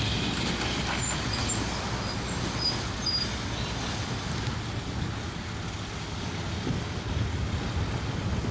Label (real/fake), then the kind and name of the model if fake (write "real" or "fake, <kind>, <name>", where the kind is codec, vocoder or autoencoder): real